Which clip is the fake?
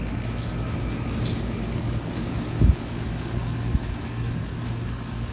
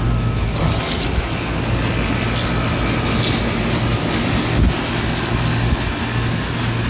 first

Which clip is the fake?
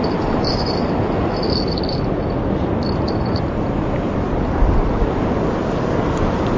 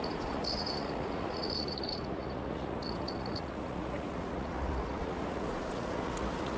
second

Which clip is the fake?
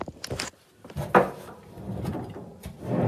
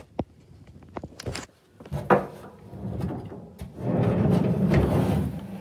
first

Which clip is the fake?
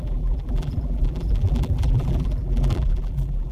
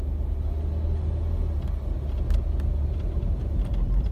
first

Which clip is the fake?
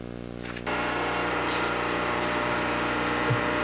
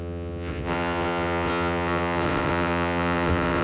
second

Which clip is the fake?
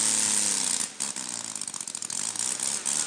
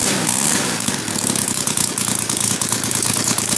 second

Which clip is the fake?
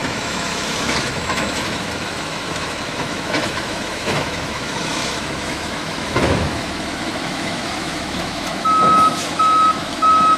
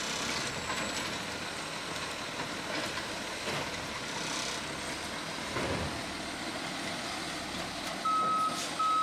first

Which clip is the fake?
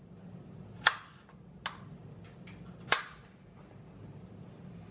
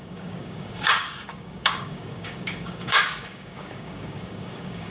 second